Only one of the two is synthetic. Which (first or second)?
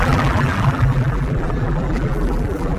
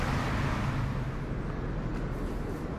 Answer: first